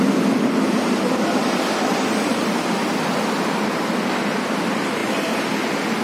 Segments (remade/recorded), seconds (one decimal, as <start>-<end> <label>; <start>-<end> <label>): 0.0-1.4 recorded; 1.4-2.5 remade; 2.5-5.0 recorded; 5.0-5.5 remade; 5.5-6.0 recorded